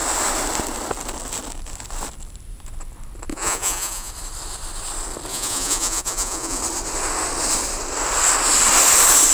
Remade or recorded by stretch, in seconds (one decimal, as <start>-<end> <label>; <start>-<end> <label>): 0.0-3.3 recorded; 3.3-4.1 remade; 4.1-5.3 recorded; 5.3-6.6 remade; 6.6-9.3 recorded